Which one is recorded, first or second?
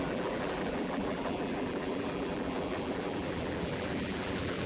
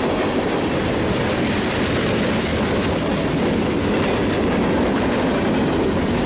second